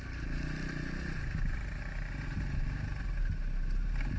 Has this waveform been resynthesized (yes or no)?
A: no